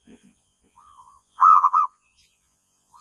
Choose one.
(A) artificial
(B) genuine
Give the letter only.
A